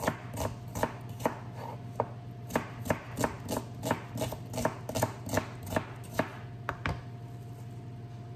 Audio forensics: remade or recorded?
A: recorded